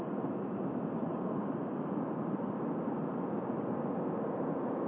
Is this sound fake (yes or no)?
no